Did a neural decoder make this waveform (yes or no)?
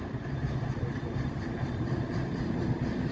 no